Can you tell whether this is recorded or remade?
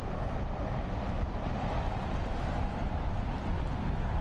recorded